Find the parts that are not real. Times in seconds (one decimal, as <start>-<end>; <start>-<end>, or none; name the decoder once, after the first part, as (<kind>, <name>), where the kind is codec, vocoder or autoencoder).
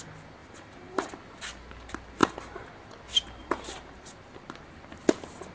0.4-1.1 (vocoder, BigVGAN v2); 2.2-2.9; 3.4-4.1